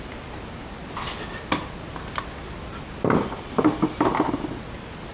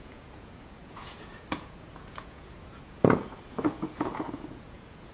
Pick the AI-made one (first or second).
second